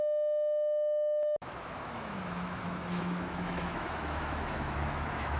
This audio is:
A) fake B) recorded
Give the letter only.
A